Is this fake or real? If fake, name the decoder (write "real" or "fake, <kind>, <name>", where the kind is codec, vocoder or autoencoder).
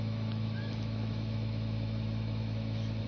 fake, autoencoder, DAC-VAE